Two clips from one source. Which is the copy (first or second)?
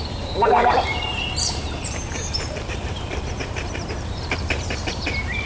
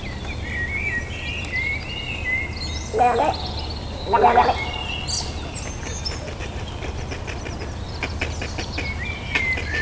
first